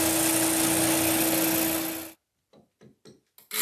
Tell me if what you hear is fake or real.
real